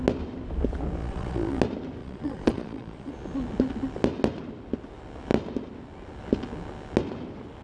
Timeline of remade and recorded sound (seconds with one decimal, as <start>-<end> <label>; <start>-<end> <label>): 0.0-1.0 recorded; 1.0-1.6 remade; 1.6-2.0 recorded; 2.0-3.1 remade; 3.1-7.6 recorded